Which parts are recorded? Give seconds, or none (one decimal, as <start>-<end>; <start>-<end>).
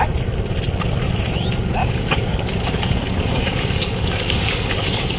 0.0-1.8